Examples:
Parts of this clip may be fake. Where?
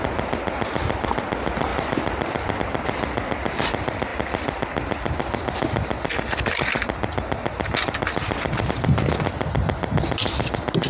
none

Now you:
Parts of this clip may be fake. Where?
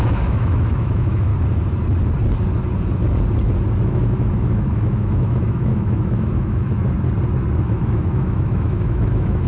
0.0-1.3 (autoencoder, DAC-VAE); 3.8-6.8; 7.6-9.5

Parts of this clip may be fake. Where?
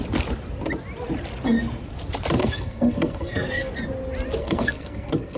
2.4-3.7 (codec, SNAC); 4.4-5.4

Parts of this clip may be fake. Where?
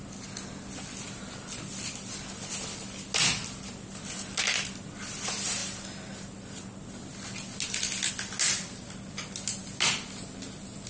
none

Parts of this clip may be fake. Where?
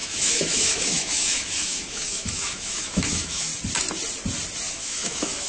0.0-3.5 (autoencoder, DAC-VAE); 4.7-5.5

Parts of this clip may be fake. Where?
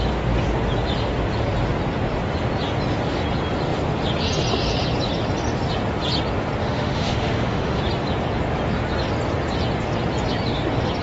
6.6-7.8 (autoencoder, DAC-VAE)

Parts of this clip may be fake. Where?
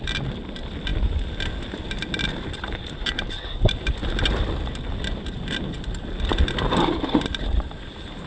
none